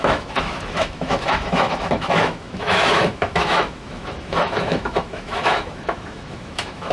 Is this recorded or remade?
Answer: remade